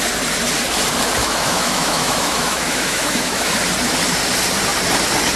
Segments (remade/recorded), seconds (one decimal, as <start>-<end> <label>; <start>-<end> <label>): 0.0-1.2 recorded; 1.2-3.6 remade; 3.6-5.4 recorded